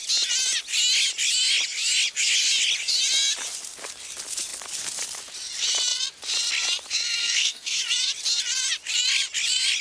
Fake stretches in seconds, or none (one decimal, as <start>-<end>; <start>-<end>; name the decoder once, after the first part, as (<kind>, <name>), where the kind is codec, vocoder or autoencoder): 7.2-7.8 (codec, SNAC)